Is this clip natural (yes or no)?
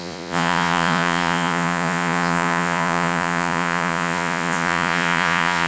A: no